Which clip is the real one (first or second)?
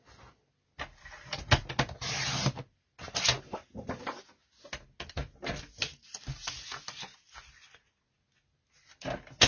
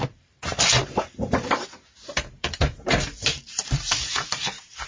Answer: first